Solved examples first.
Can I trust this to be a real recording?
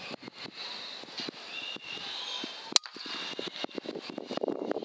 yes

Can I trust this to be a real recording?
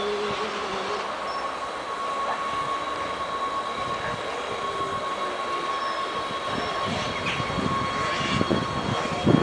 yes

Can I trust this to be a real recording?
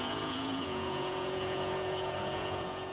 no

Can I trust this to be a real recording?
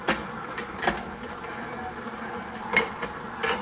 yes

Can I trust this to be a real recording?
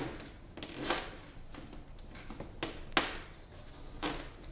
yes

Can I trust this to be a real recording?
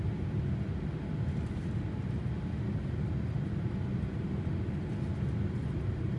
yes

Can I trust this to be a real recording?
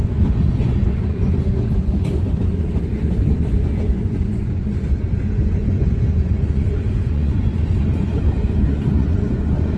no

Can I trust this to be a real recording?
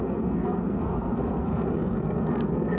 no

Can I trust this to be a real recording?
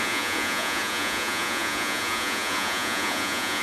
no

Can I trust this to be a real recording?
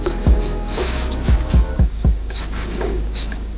no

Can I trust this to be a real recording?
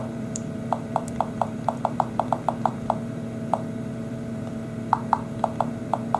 no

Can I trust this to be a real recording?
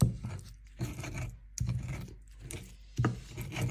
yes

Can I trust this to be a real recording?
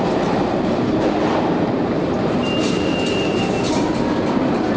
no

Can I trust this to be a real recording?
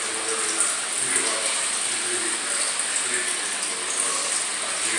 yes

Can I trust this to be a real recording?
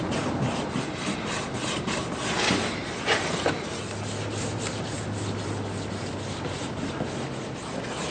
yes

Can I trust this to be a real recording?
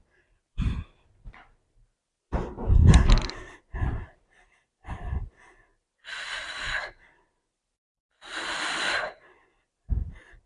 no